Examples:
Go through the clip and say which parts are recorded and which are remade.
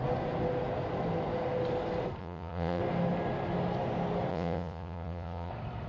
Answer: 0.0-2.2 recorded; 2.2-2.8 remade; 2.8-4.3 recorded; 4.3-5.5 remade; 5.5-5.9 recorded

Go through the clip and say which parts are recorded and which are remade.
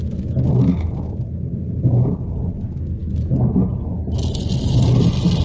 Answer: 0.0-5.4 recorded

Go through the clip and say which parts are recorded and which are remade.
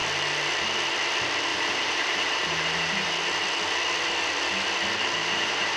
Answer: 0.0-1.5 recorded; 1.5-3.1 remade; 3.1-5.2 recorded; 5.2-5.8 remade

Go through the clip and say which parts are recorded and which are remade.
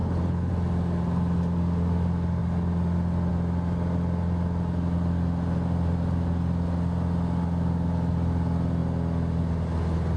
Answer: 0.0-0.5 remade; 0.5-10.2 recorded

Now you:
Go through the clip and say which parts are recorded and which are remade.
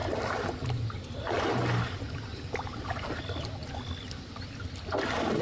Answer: 0.0-3.2 remade; 3.2-3.6 recorded; 3.6-4.6 remade; 4.6-5.4 recorded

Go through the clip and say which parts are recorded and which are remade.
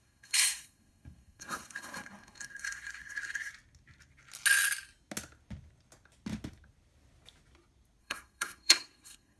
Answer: 0.0-3.5 remade; 3.5-8.0 recorded; 8.0-9.4 remade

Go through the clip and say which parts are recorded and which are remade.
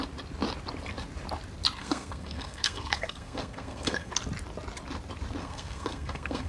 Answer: 0.0-1.8 recorded; 1.8-4.1 remade; 4.1-5.4 recorded; 5.4-6.5 remade